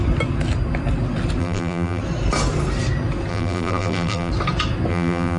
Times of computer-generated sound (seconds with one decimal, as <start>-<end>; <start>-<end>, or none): 1.4-2.0; 3.3-4.3; 4.9-5.4

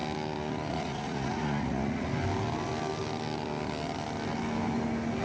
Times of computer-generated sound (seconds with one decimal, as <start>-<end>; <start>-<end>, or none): 0.7-2.1

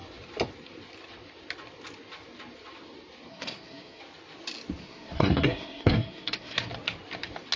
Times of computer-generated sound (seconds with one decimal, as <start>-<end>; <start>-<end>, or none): 3.3-4.0; 4.8-6.7

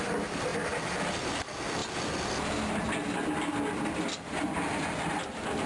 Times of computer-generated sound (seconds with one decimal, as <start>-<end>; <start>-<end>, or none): 0.0-1.8; 5.2-5.7